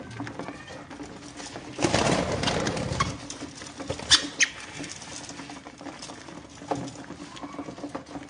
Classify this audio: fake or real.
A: real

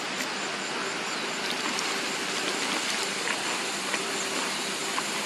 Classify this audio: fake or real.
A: real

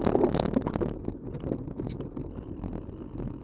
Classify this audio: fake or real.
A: real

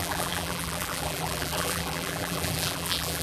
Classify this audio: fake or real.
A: fake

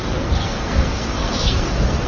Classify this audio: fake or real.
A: fake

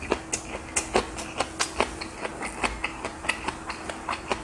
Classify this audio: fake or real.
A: real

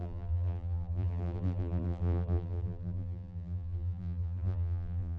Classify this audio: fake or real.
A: fake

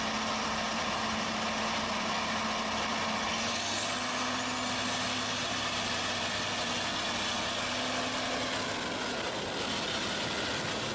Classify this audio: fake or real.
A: real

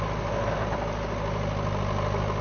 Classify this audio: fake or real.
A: real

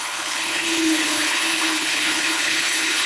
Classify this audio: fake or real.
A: fake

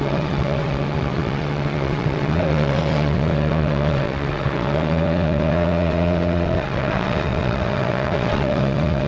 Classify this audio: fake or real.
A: fake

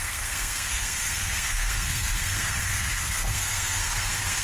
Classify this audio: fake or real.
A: fake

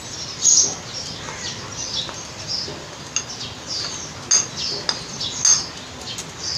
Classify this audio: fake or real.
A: real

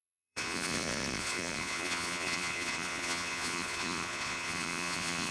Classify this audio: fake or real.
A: fake